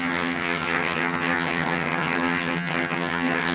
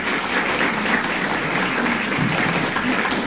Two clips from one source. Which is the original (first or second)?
second